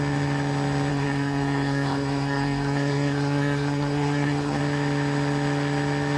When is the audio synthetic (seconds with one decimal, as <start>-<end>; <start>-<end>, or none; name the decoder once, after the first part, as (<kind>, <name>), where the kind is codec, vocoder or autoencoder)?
0.9-4.6 (codec, SNAC)